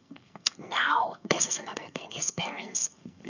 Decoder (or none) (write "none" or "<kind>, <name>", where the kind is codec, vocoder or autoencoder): codec, SNAC